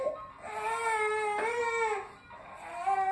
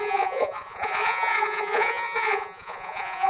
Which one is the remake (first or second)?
second